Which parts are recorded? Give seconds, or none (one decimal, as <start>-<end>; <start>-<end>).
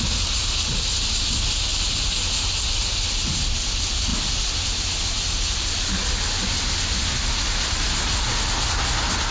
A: 0.0-9.3